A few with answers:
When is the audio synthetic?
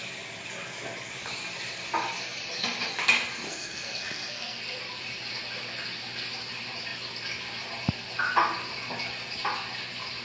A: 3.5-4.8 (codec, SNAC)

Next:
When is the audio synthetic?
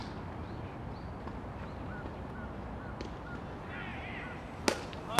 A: 3.9-4.6 (vocoder, BigVGAN v2)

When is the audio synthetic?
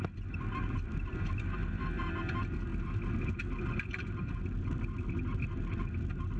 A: none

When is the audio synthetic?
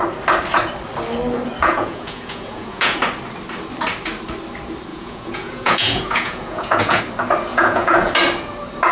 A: 1.6-3.0 (vocoder, Vocos); 4.9-7.0; 7.5-8.1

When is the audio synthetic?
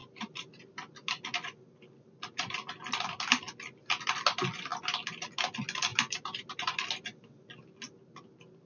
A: 0.0-0.7 (vocoder, BigVGAN v2); 5.9-6.9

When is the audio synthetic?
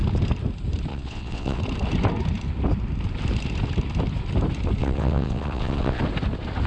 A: 0.9-1.6 (vocoder, WaveNeXt); 4.8-6.0